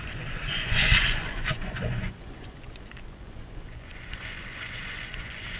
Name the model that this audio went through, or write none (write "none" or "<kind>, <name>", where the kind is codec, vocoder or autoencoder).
vocoder, Vocos